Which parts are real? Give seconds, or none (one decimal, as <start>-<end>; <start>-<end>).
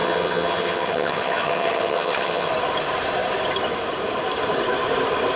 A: 2.5-5.4